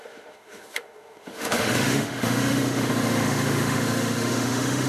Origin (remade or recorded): remade